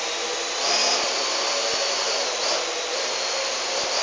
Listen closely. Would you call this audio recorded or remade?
recorded